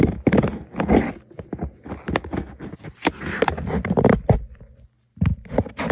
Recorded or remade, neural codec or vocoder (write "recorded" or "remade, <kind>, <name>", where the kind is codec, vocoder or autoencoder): recorded